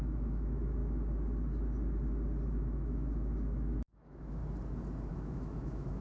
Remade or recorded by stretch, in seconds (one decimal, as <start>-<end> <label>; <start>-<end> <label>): 0.0-0.8 remade; 0.8-2.6 recorded; 2.6-4.4 remade; 4.4-5.1 recorded; 5.1-6.0 remade